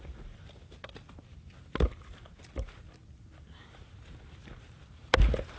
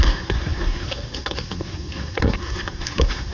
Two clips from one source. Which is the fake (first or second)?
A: second